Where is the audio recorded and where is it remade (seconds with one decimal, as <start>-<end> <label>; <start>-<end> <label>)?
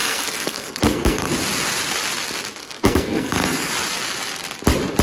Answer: 0.0-1.3 remade; 1.3-2.6 recorded; 2.6-3.7 remade; 3.7-5.0 recorded